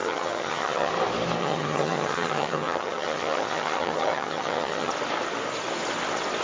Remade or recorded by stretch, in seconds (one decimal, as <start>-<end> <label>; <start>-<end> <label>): 0.0-0.9 remade; 0.9-1.4 recorded; 1.4-4.9 remade; 4.9-6.4 recorded

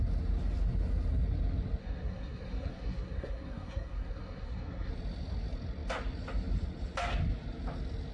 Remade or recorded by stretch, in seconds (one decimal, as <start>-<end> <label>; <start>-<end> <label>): 0.0-1.8 recorded; 1.8-4.9 remade; 4.9-8.1 recorded

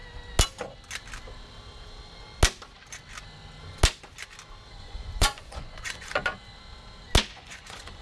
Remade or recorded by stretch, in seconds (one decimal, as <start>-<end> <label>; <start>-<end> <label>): 0.0-4.8 recorded; 4.8-6.3 remade; 6.3-7.3 recorded; 7.3-8.0 remade

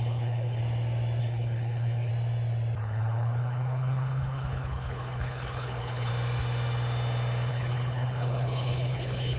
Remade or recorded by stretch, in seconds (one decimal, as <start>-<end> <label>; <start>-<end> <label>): 0.0-0.6 remade; 0.6-1.2 recorded; 1.2-2.1 remade; 2.1-2.8 recorded; 2.8-6.1 remade; 6.1-7.5 recorded; 7.5-9.4 remade

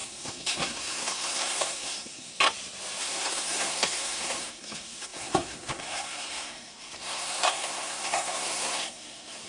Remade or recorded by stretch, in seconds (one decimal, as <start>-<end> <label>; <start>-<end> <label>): 0.0-2.3 remade; 2.3-3.0 recorded; 3.0-9.5 remade

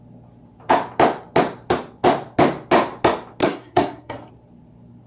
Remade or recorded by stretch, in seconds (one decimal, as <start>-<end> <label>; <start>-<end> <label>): 0.0-3.4 recorded; 3.4-4.3 remade; 4.3-5.1 recorded